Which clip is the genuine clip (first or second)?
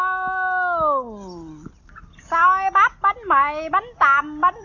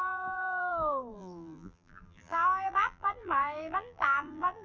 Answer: first